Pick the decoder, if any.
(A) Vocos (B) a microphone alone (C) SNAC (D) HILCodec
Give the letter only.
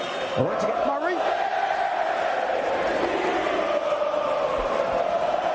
B